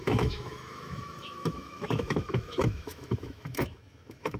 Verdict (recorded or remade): remade